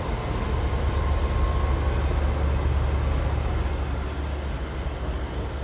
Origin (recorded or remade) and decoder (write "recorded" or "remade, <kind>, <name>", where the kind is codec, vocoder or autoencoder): recorded